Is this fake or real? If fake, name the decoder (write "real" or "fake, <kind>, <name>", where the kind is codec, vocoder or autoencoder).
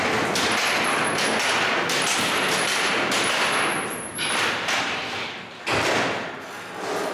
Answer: real